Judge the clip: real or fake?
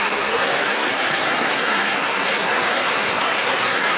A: fake